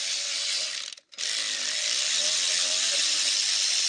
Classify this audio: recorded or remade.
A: recorded